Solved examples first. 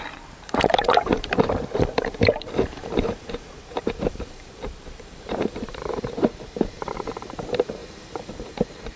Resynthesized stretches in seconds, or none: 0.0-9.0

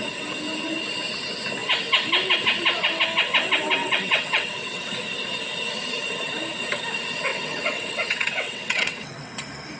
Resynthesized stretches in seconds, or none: 3.8-4.9; 7.3-9.4

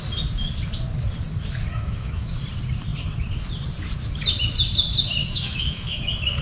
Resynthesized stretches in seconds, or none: 1.7-2.4; 5.2-6.0

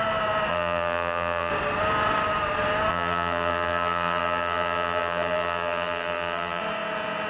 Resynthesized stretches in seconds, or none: 0.5-1.5; 2.9-6.6